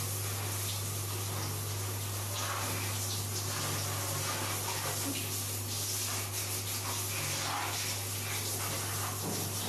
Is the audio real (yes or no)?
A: yes